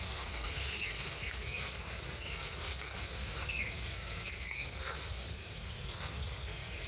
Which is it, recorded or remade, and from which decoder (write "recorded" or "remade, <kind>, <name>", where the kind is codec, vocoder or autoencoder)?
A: remade, codec, SNAC